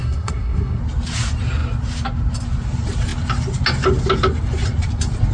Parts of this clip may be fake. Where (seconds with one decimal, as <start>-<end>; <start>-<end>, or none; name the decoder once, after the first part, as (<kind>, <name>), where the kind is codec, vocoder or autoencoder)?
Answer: 0.0-0.8 (codec, SNAC)